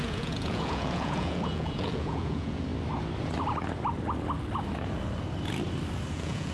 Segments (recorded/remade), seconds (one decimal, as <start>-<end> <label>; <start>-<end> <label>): 0.0-2.7 remade; 2.7-6.1 recorded; 6.1-6.5 remade